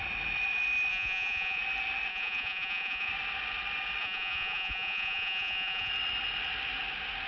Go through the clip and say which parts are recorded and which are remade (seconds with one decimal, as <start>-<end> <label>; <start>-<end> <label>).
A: 0.0-0.9 recorded; 0.9-1.6 remade; 1.6-2.1 recorded; 2.1-3.1 remade; 3.1-4.0 recorded; 4.0-5.9 remade; 5.9-7.3 recorded